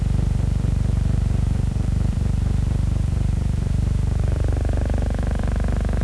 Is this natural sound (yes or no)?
no